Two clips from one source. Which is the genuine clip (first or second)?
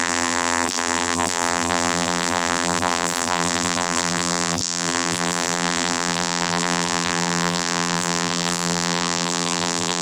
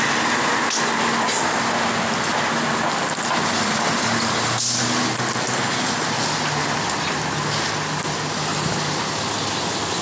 second